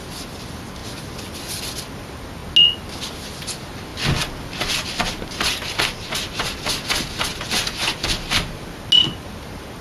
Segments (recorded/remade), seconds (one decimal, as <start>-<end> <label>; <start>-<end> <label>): 0.0-9.8 recorded